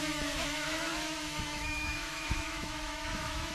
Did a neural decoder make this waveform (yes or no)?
yes